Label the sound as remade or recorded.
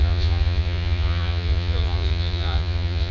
remade